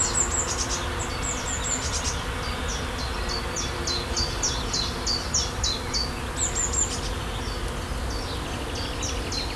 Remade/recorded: recorded